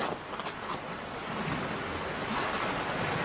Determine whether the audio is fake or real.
real